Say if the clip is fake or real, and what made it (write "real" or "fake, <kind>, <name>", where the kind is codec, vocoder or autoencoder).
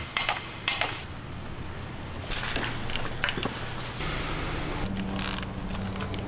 real